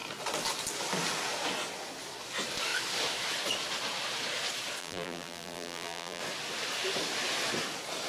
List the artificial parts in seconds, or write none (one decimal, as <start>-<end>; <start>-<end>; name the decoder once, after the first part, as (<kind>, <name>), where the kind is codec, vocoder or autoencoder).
4.8-6.2 (vocoder, BigVGAN v2)